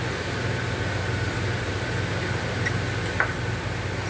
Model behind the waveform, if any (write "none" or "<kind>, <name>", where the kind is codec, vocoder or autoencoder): none